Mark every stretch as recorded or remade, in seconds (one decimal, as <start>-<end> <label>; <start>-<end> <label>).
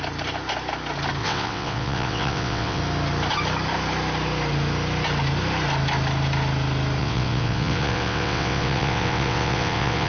0.0-1.2 recorded; 1.2-2.8 remade; 2.8-7.0 recorded; 7.0-10.1 remade